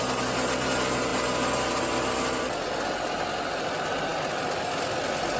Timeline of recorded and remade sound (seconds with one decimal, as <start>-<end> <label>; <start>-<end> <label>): 0.0-5.4 recorded